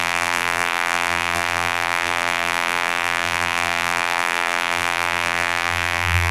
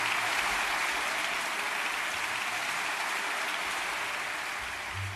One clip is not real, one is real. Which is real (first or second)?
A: second